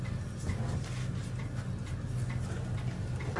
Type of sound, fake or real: real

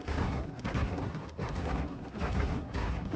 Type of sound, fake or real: fake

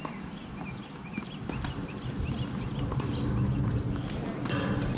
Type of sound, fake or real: real